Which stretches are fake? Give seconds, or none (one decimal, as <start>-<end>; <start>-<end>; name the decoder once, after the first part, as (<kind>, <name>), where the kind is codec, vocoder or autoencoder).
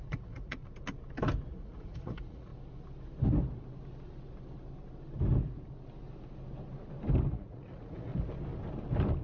0.0-0.6 (vocoder, Vocos); 1.5-2.5; 7.3-8.1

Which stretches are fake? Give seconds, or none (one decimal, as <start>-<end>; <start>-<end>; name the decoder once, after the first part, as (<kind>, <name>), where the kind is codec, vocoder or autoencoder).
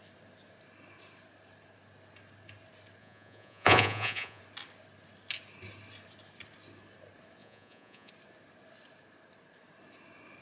3.0-4.4 (vocoder, Vocos); 7.4-8.1